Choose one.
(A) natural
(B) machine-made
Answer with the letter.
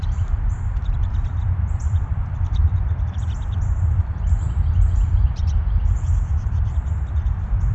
B